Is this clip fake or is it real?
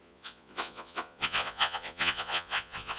fake